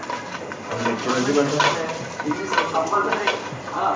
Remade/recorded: recorded